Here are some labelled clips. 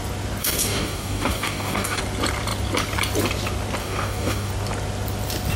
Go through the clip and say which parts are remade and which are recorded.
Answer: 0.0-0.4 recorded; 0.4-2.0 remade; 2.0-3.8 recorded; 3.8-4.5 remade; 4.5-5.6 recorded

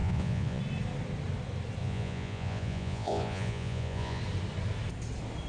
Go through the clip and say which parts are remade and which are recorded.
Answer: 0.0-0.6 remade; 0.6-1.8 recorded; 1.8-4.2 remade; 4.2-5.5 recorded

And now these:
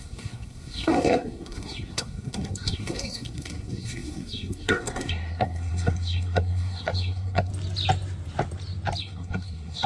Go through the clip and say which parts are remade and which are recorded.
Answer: 0.0-7.5 remade; 7.5-9.0 recorded; 9.0-9.9 remade

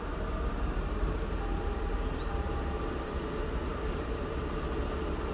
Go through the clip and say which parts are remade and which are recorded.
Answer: 0.0-3.2 remade; 3.2-3.7 recorded; 3.7-4.4 remade; 4.4-5.3 recorded

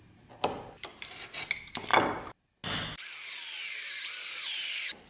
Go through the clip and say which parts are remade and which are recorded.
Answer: 0.0-5.1 recorded